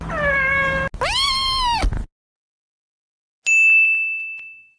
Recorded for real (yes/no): yes